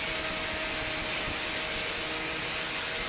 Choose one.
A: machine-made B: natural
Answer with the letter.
B